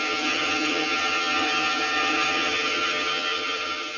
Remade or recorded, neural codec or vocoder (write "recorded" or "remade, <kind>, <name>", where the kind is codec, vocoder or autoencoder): remade, vocoder, HiFi-GAN